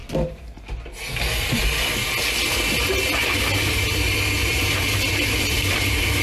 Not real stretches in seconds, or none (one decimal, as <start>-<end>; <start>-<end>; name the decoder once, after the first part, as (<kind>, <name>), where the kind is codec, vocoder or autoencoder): 4.4-6.2 (vocoder, BigVGAN v2)